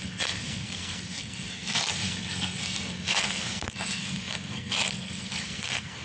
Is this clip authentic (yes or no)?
no